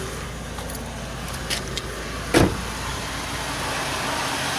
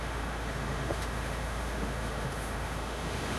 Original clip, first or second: first